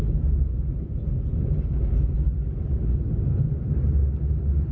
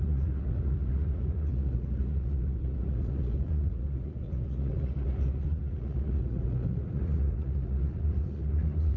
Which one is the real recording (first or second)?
first